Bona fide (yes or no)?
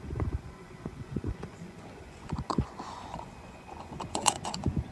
no